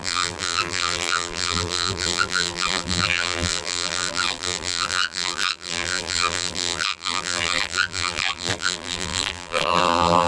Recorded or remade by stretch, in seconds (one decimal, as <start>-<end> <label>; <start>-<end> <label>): 0.0-10.3 remade